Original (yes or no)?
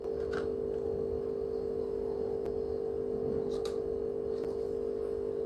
yes